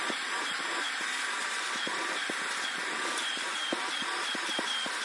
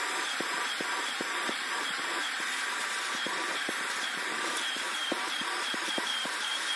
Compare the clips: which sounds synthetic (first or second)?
second